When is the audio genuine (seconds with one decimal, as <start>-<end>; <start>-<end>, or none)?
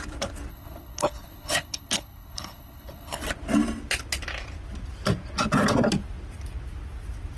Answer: 0.0-0.5; 3.2-7.4